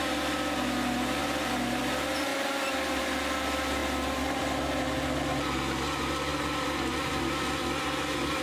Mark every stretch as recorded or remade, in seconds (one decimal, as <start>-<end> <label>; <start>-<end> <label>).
0.0-1.2 recorded; 1.2-1.8 remade; 1.8-2.3 recorded; 2.3-3.0 remade; 3.0-6.3 recorded; 6.3-7.1 remade; 7.1-8.4 recorded